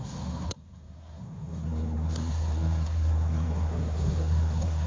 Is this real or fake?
fake